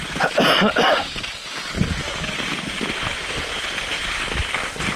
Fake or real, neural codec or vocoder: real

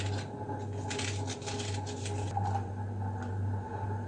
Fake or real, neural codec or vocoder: real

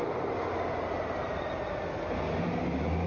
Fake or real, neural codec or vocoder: real